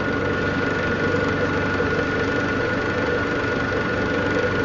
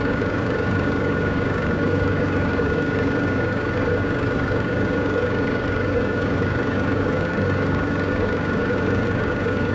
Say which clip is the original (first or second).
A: first